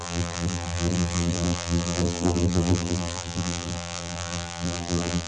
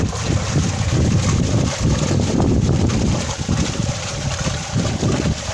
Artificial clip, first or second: first